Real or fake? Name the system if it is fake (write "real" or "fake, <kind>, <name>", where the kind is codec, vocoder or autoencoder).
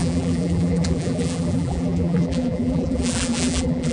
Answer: fake, vocoder, BigVGAN v2